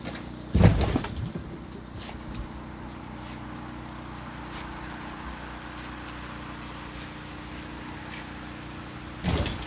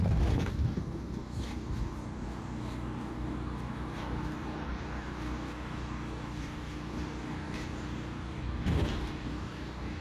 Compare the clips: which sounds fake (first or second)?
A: second